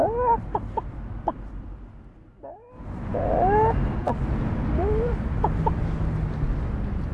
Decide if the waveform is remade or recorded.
recorded